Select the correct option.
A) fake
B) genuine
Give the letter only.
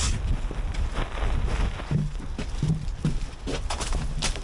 B